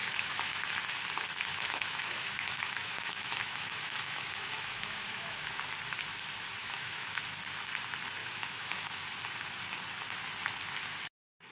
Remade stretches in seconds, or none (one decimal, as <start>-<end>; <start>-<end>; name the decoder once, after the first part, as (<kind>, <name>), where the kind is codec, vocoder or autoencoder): 0.0-0.6 (autoencoder, DAC-VAE); 1.5-5.6; 6.6-7.2; 8.2-9.0